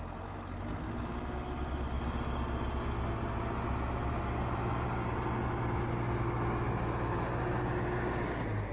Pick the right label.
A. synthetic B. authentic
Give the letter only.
B